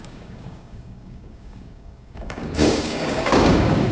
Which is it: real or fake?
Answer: fake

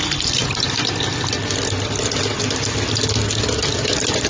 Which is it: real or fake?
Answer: real